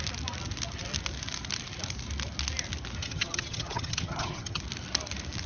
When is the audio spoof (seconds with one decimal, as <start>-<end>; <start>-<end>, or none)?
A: 3.0-4.6